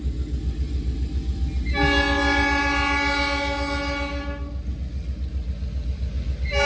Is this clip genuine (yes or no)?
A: yes